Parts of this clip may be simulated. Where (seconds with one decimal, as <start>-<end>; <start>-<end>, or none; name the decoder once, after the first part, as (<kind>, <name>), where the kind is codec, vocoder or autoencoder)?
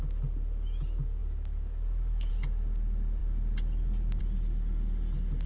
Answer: none